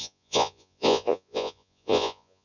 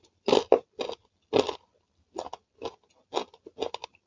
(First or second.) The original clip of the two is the second